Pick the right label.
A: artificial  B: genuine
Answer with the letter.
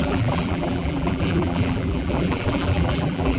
A